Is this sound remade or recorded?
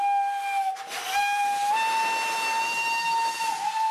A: recorded